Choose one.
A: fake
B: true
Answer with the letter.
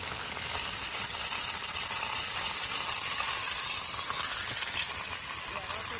B